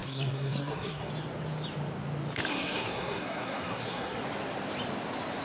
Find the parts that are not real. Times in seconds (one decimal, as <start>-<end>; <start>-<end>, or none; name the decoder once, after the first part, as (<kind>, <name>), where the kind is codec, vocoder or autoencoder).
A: 0.0-1.1 (codec, SNAC); 2.5-4.2